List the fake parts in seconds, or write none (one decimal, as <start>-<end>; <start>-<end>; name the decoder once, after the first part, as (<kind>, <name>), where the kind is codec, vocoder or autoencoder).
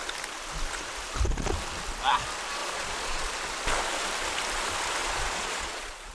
2.6-3.3 (vocoder, Vocos); 5.0-6.1